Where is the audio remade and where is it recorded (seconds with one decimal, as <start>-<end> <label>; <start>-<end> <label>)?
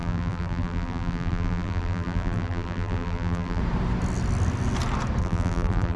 0.0-3.6 remade; 3.6-5.2 recorded; 5.2-6.0 remade